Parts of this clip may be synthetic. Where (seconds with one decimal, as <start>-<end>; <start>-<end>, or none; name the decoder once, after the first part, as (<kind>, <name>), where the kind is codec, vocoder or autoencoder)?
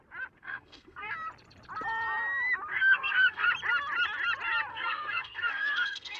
0.4-1.1 (codec, SNAC); 2.7-3.5; 4.7-6.2